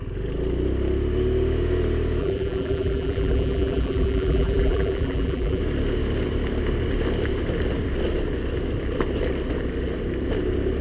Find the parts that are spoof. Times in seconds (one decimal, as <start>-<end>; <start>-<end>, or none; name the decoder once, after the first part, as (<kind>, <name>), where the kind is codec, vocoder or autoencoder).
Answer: 2.2-5.6 (vocoder, BigVGAN v2)